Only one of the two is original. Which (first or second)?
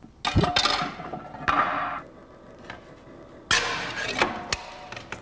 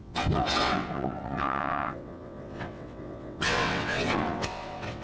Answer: first